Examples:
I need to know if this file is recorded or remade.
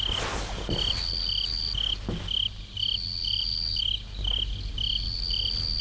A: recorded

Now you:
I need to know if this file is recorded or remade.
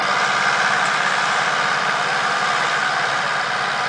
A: remade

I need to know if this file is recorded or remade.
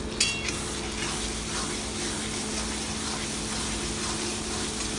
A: recorded